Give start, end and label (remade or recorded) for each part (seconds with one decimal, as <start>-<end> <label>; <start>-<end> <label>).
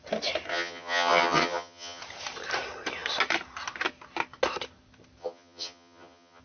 0.0-0.5 recorded; 0.5-2.0 remade; 2.0-5.2 recorded; 5.2-6.4 remade